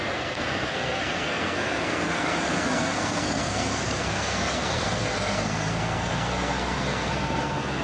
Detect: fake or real fake